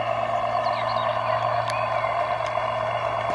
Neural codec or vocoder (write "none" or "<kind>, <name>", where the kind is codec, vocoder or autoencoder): none